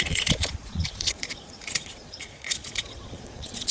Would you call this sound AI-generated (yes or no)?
yes